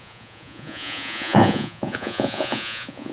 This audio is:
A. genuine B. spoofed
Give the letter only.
B